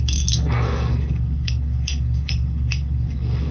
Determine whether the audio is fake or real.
fake